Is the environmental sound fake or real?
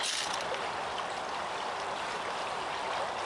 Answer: fake